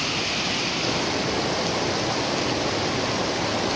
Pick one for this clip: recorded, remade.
recorded